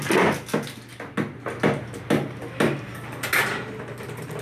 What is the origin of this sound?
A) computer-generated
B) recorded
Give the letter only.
B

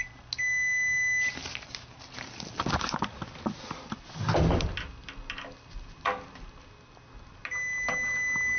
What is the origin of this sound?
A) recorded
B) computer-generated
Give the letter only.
A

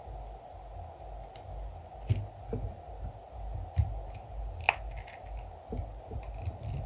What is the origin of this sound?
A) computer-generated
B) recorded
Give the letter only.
B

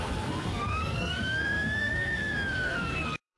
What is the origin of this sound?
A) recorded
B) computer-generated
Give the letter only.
B